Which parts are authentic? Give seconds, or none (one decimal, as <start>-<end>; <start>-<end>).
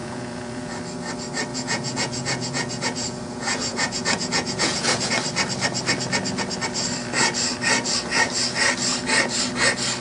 0.7-1.5; 5.1-10.0